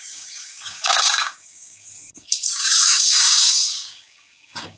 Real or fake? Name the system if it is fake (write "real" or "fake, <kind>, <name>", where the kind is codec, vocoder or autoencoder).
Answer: fake, codec, DAC